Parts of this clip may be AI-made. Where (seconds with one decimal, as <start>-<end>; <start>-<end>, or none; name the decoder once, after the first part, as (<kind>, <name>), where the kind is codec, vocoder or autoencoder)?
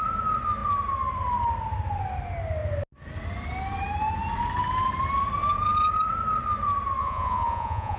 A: 7.0-8.0 (vocoder, Vocos)